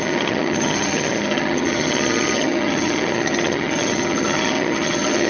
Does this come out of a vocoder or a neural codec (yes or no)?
yes